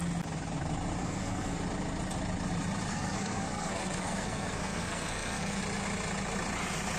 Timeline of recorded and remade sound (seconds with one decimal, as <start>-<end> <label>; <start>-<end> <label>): 0.0-1.0 recorded; 1.0-1.6 remade; 1.6-2.9 recorded; 2.9-5.6 remade; 5.6-7.0 recorded